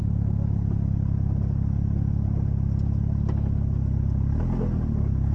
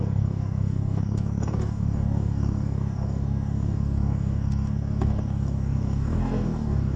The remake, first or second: second